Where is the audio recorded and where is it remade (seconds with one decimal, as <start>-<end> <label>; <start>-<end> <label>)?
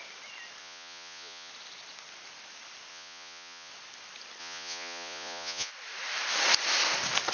0.0-0.6 recorded; 0.6-1.5 remade; 1.5-2.9 recorded; 2.9-3.7 remade; 3.7-4.4 recorded; 4.4-5.7 remade; 5.7-7.3 recorded